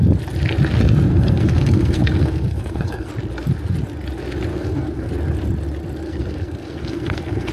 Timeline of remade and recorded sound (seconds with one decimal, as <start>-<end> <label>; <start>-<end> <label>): 0.0-1.1 recorded; 1.1-3.1 remade; 3.1-4.5 recorded; 4.5-5.1 remade; 5.1-6.0 recorded; 6.0-7.5 remade

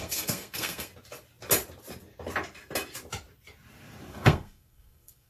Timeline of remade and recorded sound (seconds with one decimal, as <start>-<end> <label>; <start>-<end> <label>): 0.0-0.9 remade; 0.9-4.1 recorded; 4.1-5.3 remade

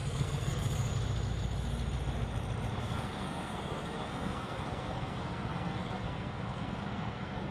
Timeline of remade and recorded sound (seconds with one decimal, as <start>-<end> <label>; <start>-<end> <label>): 0.0-0.9 remade; 0.9-2.8 recorded; 2.8-7.5 remade

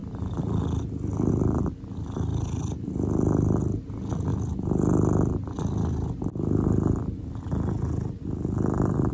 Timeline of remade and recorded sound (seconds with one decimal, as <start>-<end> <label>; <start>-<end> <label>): 0.0-9.1 recorded

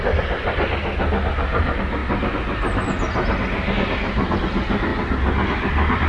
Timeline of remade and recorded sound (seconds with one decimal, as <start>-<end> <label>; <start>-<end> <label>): 0.0-6.1 recorded

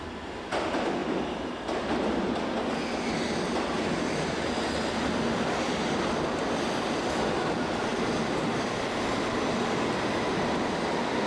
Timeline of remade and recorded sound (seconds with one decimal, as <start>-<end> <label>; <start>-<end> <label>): 0.0-11.3 recorded

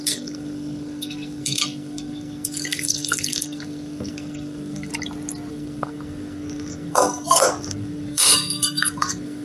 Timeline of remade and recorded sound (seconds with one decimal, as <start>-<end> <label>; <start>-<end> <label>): 0.0-4.9 remade; 4.9-5.5 recorded; 5.5-9.4 remade